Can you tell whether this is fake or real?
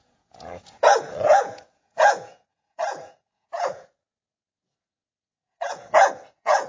fake